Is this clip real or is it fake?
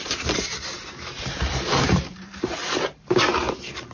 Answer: fake